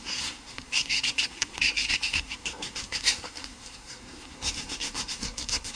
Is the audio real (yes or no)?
no